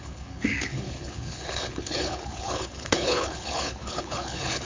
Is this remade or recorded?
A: remade